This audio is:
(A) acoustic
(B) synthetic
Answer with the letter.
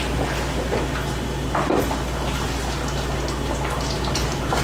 A